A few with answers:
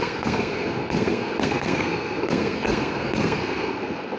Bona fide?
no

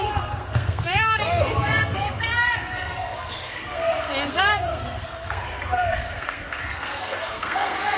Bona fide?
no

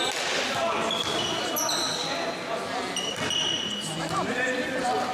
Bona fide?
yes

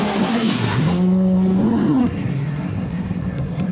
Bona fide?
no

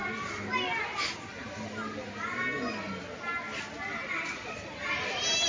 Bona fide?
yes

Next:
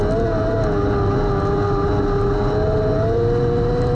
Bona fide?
yes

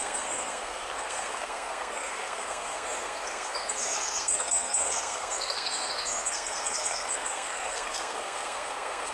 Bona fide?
no